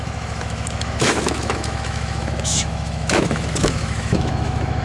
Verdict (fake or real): fake